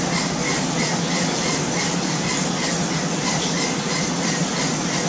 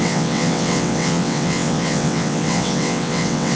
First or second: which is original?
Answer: first